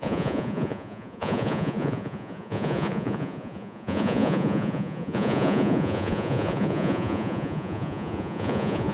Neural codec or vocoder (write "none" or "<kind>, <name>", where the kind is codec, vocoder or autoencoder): vocoder, Vocos